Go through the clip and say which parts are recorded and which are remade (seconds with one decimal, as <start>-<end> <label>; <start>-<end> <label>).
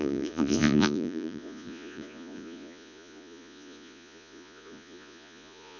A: 0.0-5.8 remade